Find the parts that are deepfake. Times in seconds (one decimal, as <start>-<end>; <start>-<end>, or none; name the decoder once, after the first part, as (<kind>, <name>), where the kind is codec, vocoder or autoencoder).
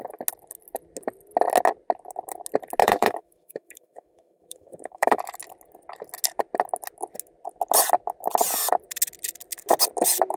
2.8-5.2 (autoencoder, DAC-VAE)